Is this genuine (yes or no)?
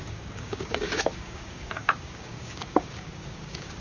no